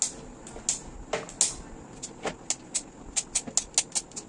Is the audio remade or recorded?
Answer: recorded